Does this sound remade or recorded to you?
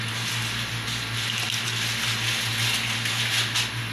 recorded